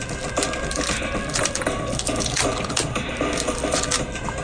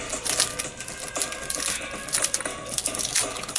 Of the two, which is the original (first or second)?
second